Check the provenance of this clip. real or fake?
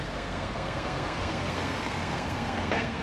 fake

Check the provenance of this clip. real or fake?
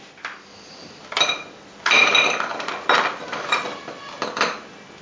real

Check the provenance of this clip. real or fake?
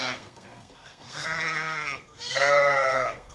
fake